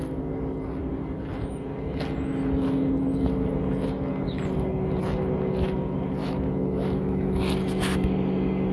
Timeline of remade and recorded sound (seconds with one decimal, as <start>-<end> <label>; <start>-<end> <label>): 0.0-6.2 recorded; 6.2-7.4 remade; 7.4-8.7 recorded